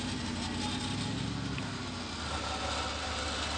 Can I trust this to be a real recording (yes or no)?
yes